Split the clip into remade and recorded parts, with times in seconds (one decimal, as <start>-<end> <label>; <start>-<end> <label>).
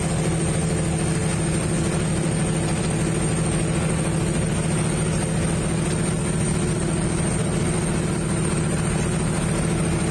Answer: 0.0-10.1 recorded